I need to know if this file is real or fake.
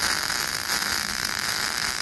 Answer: fake